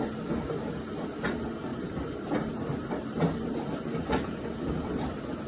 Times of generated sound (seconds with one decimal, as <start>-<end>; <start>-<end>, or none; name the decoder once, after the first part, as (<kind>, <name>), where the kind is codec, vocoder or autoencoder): 1.7-5.0 (vocoder, BigVGAN v2)